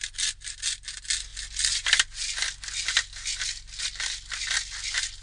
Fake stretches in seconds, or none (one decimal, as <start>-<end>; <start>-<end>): none